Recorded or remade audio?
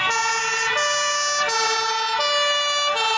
recorded